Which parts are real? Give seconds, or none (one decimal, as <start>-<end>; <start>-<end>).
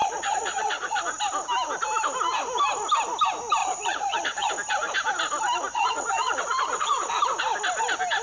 1.0-3.6; 4.5-5.7; 7.1-8.2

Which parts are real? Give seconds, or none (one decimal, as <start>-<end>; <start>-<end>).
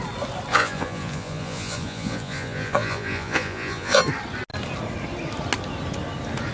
0.0-0.5; 4.0-6.5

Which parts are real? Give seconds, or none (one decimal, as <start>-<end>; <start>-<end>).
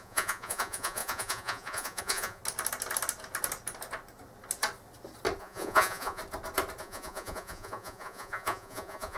2.4-5.4; 6.2-6.8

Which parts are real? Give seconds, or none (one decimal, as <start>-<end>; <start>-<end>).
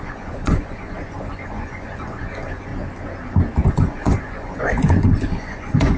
2.7-3.7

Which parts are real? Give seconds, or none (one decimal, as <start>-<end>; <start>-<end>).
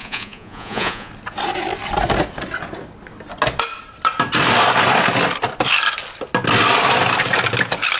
1.1-8.0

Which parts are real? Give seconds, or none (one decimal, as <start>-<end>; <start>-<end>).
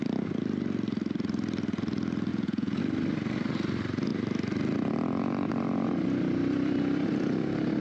0.0-2.3; 2.8-7.8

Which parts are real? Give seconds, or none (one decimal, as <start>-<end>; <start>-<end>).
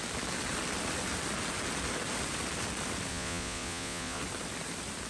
0.0-3.1; 4.2-5.1